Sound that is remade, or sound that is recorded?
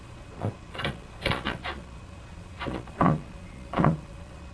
remade